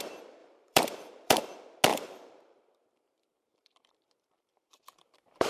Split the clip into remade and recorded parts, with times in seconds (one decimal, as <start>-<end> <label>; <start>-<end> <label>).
0.0-0.4 recorded; 0.4-1.4 remade; 1.4-1.9 recorded; 1.9-5.5 remade